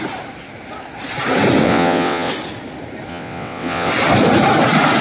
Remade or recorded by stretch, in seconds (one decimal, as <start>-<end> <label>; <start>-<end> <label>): 0.0-1.6 recorded; 1.6-2.3 remade; 2.3-3.1 recorded; 3.1-3.9 remade; 3.9-5.0 recorded